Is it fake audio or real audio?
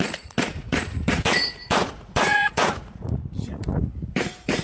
fake